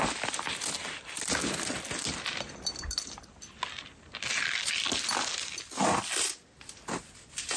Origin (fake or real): real